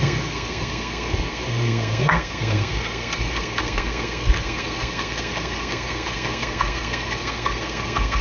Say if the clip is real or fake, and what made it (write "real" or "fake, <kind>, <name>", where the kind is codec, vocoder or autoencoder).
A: fake, codec, SNAC